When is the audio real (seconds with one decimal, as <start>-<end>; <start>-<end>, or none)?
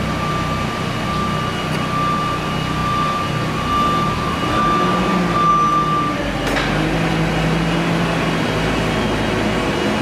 0.0-10.0